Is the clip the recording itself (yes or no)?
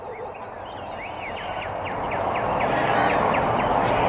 yes